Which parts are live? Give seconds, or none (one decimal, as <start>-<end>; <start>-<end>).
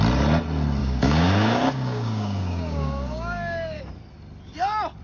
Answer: 0.0-0.8; 3.8-5.0